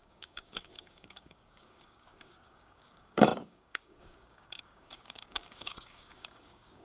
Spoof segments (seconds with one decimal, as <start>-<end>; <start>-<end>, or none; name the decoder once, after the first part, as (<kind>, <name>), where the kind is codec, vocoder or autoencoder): 0.0-6.8 (codec, DAC)